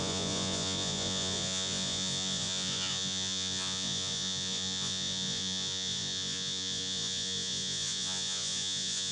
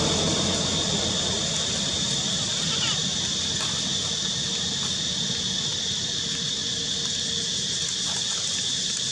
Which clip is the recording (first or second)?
second